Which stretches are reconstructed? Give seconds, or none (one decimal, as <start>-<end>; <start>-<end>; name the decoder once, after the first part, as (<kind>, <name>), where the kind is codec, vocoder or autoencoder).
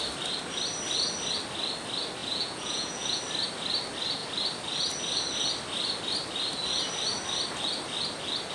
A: 2.2-3.2 (vocoder, Vocos)